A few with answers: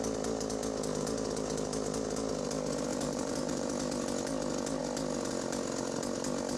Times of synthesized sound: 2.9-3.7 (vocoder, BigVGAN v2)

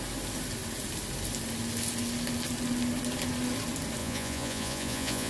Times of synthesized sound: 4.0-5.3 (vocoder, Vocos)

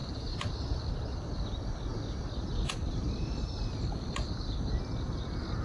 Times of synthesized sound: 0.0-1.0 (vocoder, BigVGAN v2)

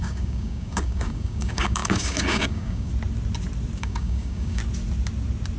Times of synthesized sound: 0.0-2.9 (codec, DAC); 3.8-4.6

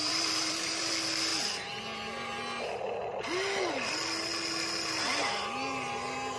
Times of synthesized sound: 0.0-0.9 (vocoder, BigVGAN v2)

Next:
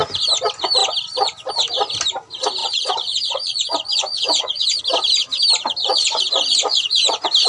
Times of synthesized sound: 2.6-4.8 (vocoder, Vocos); 5.8-7.1